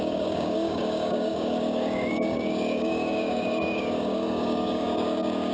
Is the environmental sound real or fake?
fake